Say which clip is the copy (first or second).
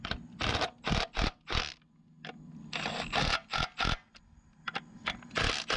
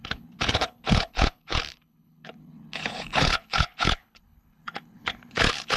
second